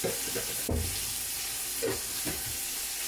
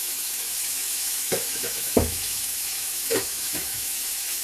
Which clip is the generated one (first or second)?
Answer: second